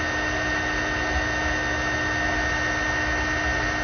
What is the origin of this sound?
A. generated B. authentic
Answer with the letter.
B